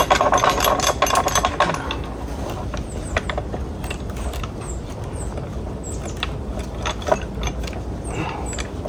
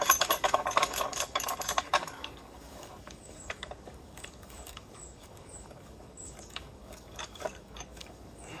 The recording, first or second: first